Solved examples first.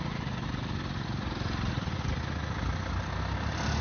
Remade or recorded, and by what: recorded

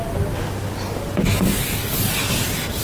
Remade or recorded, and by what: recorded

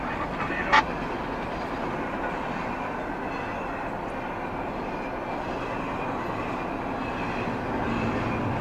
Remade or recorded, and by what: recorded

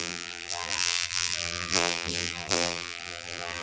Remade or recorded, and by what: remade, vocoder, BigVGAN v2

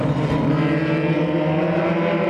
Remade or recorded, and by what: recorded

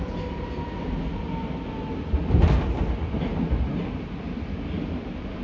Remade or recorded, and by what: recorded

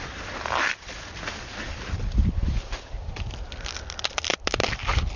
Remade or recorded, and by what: remade, vocoder, BigVGAN v2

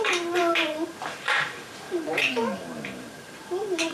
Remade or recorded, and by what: remade, vocoder, BigVGAN v2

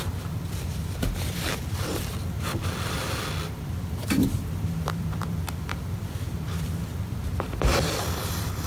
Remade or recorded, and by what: remade, vocoder, BigVGAN v2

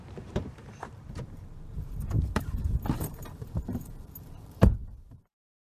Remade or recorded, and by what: remade, vocoder, BigVGAN v2